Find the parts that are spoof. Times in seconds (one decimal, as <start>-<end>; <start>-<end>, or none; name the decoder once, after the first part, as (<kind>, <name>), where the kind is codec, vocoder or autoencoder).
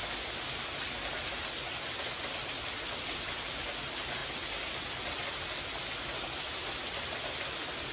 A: none